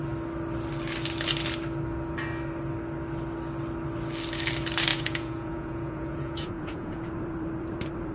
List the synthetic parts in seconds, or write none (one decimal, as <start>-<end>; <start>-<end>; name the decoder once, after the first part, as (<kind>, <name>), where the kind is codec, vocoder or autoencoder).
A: 4.9-7.1 (vocoder, Vocos)